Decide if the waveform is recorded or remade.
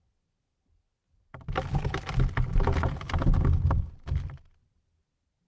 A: recorded